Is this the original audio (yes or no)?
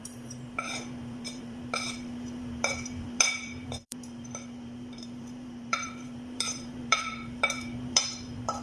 no